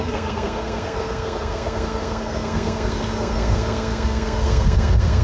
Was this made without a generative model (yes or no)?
no